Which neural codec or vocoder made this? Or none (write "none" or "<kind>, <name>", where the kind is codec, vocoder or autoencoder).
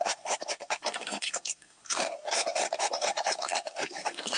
codec, SNAC